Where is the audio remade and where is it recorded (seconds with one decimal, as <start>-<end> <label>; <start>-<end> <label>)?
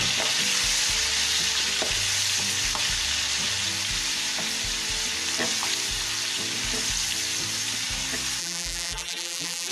0.0-8.4 recorded; 8.4-9.7 remade